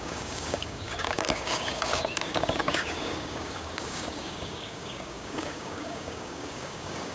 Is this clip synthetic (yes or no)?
yes